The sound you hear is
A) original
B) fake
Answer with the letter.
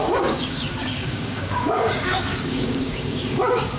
B